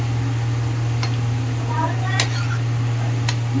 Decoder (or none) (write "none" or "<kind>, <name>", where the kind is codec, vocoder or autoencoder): none